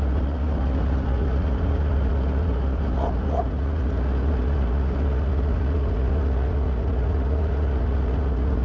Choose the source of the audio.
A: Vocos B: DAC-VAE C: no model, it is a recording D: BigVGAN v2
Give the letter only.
A